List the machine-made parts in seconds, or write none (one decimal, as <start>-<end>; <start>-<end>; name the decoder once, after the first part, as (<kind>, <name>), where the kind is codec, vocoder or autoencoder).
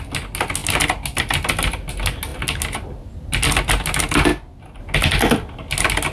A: none